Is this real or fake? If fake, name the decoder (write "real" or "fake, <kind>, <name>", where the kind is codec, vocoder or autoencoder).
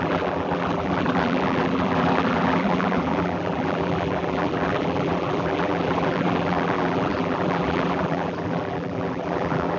fake, vocoder, BigVGAN v2